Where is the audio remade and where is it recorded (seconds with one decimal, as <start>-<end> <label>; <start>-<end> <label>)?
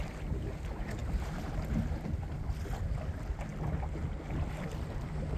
0.0-5.4 recorded